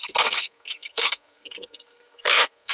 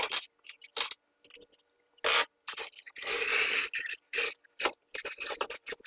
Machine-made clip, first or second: first